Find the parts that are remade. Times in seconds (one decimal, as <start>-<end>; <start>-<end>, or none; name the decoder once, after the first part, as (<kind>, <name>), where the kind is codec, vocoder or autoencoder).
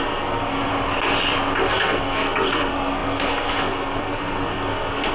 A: 0.0-0.7 (codec, SNAC); 1.7-5.1